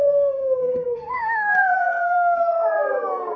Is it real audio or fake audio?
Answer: fake